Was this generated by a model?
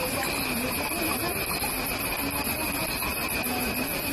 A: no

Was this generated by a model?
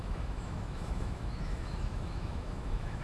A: yes